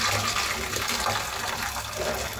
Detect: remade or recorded recorded